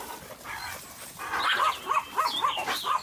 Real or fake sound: real